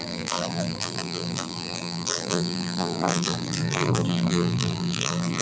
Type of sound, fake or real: fake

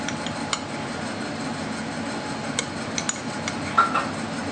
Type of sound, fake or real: real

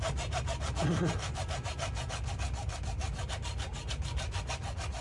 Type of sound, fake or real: real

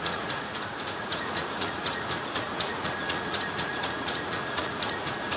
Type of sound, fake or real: fake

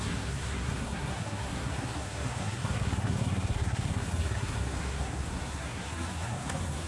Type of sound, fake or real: fake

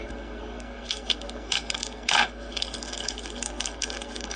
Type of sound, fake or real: fake